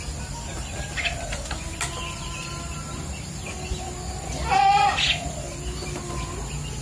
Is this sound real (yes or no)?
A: yes